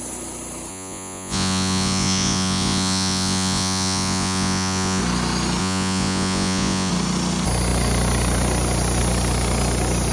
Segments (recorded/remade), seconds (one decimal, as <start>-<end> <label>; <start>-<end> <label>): 0.0-0.7 recorded; 0.7-5.0 remade; 5.0-5.6 recorded; 5.6-6.9 remade; 6.9-10.1 recorded